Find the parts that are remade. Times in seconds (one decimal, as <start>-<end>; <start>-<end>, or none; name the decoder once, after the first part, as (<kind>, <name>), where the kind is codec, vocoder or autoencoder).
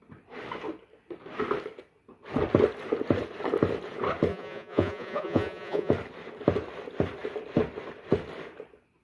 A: 4.3-5.9 (vocoder, Vocos)